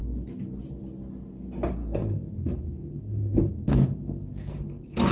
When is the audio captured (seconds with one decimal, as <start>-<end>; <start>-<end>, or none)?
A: 0.0-1.8